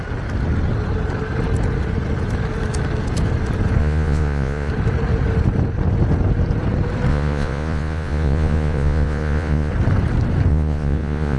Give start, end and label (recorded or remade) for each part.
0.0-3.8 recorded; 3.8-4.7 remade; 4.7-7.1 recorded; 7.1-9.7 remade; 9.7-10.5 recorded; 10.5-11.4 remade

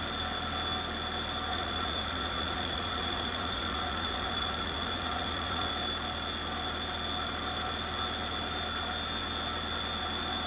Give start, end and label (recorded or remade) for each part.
0.0-1.5 recorded; 1.5-5.7 remade; 5.7-10.5 recorded

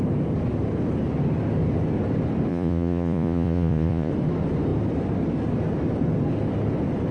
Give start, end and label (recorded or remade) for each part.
0.0-2.5 recorded; 2.5-4.1 remade; 4.1-7.1 recorded

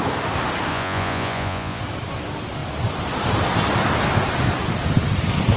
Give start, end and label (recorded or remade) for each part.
0.0-0.7 recorded; 0.7-1.8 remade; 1.8-5.6 recorded

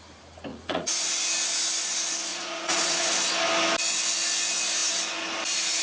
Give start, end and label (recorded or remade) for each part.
0.0-0.5 recorded; 0.5-1.2 remade; 1.2-2.3 recorded; 2.3-3.1 remade; 3.1-5.8 recorded